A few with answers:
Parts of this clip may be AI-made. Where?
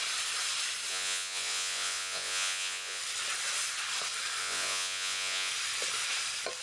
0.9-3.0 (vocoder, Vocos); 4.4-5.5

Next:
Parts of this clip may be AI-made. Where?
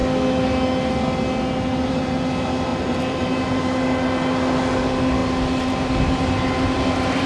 2.7-3.8 (vocoder, BigVGAN v2)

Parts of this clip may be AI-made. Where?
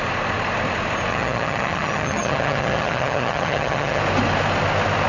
1.1-4.0 (vocoder, HiFi-GAN)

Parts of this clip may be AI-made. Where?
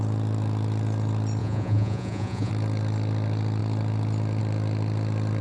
1.4-2.5 (vocoder, Vocos)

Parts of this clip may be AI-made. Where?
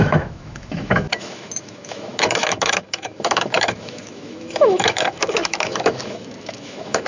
0.0-7.1 (autoencoder, DAC-VAE)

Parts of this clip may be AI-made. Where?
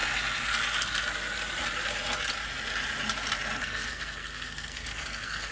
3.6-5.5 (codec, SNAC)